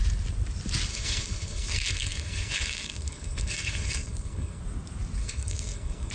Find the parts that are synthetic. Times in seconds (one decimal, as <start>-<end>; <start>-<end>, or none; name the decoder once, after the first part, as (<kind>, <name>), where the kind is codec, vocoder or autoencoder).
0.9-4.6 (codec, SNAC); 5.2-6.1